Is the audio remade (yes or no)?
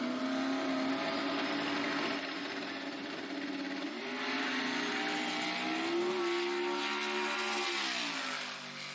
no